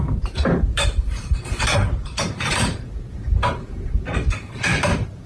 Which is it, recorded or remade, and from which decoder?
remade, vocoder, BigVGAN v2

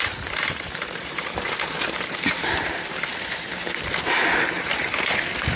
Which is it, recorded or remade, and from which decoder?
remade, vocoder, BigVGAN v2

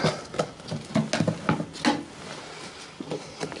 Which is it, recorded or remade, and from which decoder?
recorded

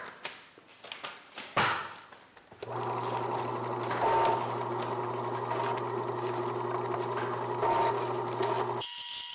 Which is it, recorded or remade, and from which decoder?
recorded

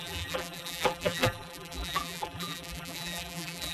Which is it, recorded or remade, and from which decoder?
remade, vocoder, BigVGAN v2